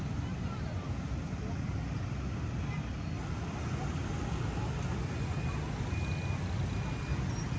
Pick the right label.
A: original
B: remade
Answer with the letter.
A